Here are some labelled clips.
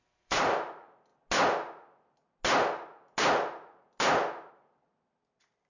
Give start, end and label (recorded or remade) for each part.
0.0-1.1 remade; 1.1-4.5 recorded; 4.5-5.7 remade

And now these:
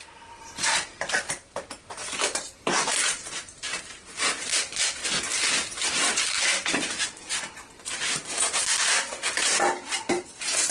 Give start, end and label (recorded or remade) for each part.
0.0-5.0 remade; 5.0-6.1 recorded; 6.1-10.7 remade

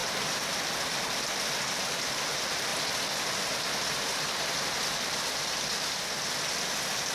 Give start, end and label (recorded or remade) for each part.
0.0-0.6 remade; 0.6-2.7 recorded; 2.7-7.1 remade

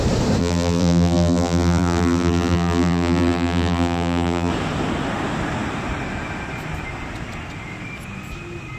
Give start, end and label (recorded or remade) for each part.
0.0-0.4 recorded; 0.4-4.5 remade; 4.5-8.8 recorded

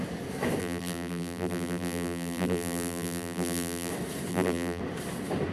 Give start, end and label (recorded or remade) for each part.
0.0-0.6 recorded; 0.6-3.9 remade; 3.9-4.3 recorded; 4.3-4.8 remade; 4.8-5.5 recorded

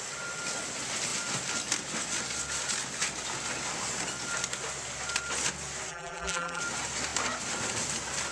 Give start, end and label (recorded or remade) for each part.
0.0-5.9 recorded; 5.9-6.6 remade; 6.6-8.3 recorded

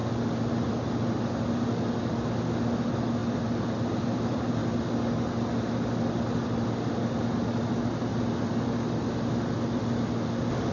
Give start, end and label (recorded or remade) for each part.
0.0-10.7 recorded